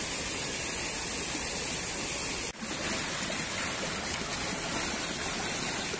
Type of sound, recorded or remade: recorded